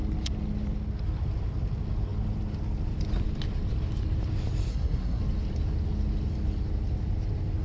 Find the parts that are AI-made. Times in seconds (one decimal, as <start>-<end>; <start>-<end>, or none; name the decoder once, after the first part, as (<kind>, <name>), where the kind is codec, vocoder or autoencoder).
4.7-5.2 (codec, SNAC)